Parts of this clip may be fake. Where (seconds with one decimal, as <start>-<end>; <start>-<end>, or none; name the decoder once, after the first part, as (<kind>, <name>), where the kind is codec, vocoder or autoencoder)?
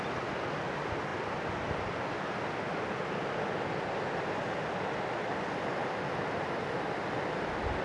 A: none